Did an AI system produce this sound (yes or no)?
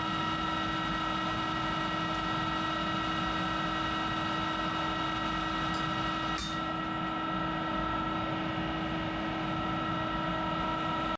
no